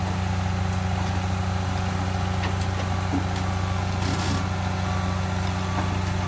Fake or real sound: real